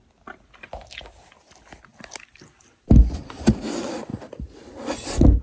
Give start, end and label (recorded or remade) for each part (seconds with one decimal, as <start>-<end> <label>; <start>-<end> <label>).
0.0-5.4 recorded